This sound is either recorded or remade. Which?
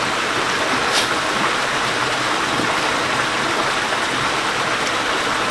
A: recorded